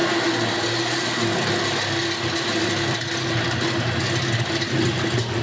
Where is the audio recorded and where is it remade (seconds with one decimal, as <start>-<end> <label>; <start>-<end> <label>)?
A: 0.0-5.4 recorded